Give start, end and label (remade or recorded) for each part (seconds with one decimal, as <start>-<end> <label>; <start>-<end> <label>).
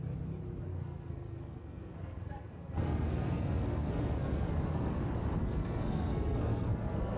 0.0-0.7 recorded; 0.7-5.0 remade; 5.0-5.4 recorded; 5.4-7.2 remade